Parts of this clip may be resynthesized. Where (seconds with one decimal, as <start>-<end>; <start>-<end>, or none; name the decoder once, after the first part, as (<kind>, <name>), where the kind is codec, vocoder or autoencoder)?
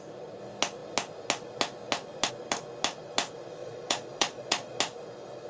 3.6-4.8 (vocoder, Vocos)